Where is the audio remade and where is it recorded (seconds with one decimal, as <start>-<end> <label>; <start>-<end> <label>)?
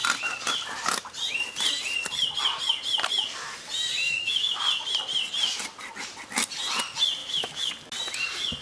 0.0-4.0 recorded; 4.0-4.6 remade; 4.6-7.2 recorded; 7.2-7.7 remade; 7.7-8.6 recorded